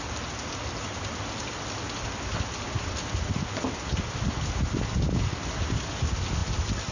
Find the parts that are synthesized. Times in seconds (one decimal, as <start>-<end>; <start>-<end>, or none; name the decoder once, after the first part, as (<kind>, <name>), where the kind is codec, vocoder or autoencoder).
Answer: none

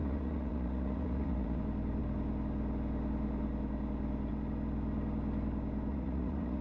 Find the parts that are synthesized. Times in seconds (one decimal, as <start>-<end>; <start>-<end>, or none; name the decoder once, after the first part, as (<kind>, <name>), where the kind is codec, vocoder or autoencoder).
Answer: 0.0-1.6 (vocoder, Vocos); 5.9-6.6

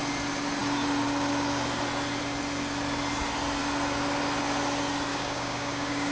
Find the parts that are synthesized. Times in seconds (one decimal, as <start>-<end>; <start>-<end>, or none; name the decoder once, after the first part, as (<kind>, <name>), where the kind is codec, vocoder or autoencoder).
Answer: 5.1-6.1 (codec, DAC)

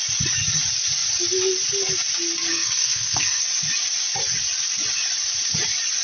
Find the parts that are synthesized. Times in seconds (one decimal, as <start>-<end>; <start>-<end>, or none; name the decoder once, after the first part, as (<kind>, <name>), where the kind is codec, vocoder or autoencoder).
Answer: 2.5-3.4 (codec, SNAC)

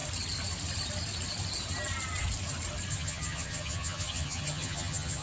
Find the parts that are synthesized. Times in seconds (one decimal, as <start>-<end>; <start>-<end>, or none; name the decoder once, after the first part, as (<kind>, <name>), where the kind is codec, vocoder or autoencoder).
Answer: 2.9-5.2 (vocoder, HiFi-GAN)